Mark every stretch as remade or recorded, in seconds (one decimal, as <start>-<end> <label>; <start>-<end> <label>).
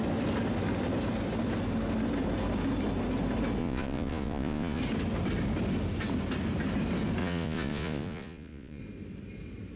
0.0-3.6 recorded; 3.6-4.8 remade; 4.8-7.2 recorded; 7.2-8.8 remade; 8.8-9.8 recorded